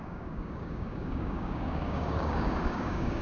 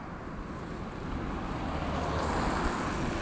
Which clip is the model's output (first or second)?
first